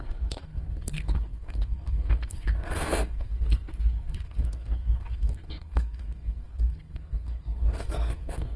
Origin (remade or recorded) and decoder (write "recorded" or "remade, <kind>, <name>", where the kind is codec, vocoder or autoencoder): remade, codec, SNAC